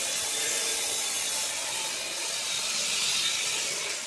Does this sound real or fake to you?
real